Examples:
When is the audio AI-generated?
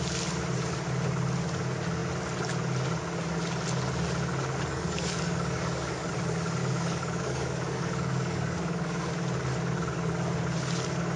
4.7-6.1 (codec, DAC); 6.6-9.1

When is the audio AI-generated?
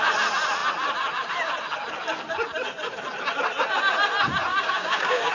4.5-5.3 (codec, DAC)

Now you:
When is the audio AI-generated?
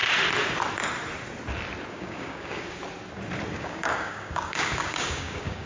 1.9-2.8 (codec, DAC); 3.5-5.7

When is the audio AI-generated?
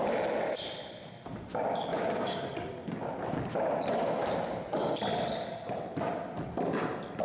1.5-2.4 (codec, DAC)